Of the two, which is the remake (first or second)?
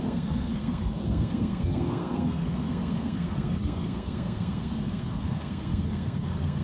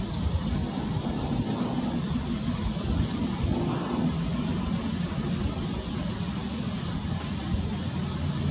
first